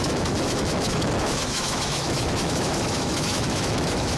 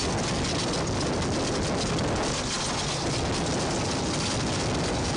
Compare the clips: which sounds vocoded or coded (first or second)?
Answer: first